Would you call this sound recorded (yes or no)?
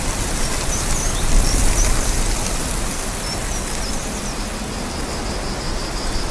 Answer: yes